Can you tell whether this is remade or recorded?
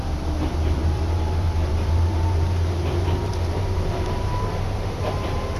remade